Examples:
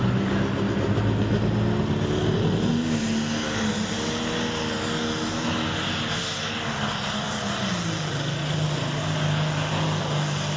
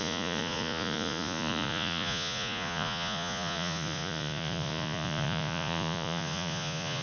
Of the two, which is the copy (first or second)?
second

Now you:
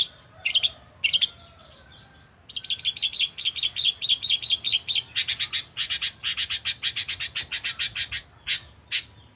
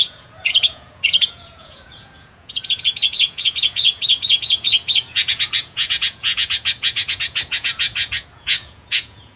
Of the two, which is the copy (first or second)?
second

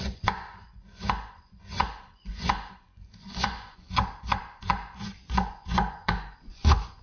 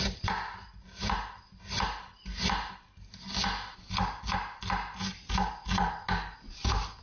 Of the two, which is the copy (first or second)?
first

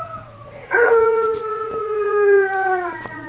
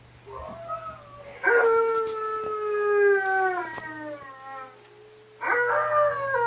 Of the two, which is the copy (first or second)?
first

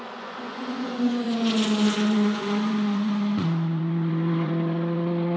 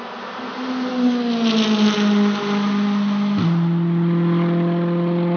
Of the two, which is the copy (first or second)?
first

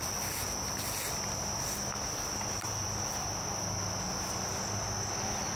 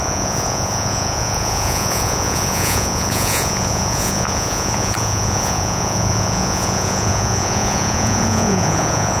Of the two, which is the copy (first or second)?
second